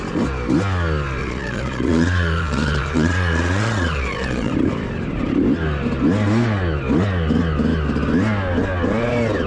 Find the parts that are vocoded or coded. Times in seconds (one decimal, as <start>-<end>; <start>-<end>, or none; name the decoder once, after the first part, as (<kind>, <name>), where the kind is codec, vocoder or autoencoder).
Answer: 1.2-4.5 (vocoder, Vocos)